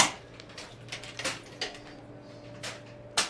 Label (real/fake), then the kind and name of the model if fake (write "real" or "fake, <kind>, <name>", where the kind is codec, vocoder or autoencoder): real